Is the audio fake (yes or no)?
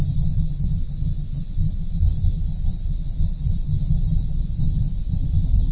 no